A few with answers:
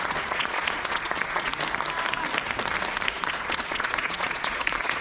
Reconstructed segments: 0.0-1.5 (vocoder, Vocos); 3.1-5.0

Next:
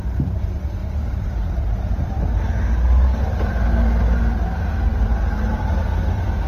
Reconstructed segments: 0.8-2.2 (vocoder, BigVGAN v2); 4.9-5.9

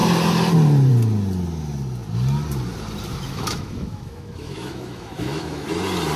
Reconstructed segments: 3.1-5.7 (autoencoder, DAC-VAE)